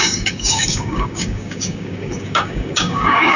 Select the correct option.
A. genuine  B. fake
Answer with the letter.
B